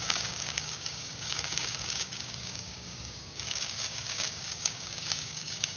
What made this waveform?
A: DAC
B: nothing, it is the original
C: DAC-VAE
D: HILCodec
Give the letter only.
A